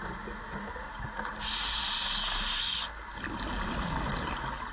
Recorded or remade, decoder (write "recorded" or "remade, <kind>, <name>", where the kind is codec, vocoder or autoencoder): recorded